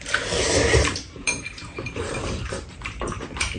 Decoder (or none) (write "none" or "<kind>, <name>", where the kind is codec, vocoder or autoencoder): vocoder, BigVGAN v2